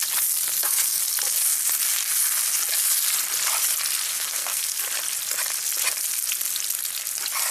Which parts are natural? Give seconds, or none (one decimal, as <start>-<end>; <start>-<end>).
0.0-0.5; 1.0-4.1; 4.8-7.5